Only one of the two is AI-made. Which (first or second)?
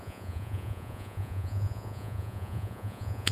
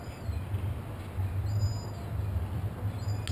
first